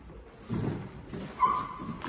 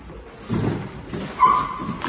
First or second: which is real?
second